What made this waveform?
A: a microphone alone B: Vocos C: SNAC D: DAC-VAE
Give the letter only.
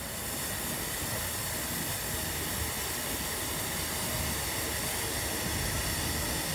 A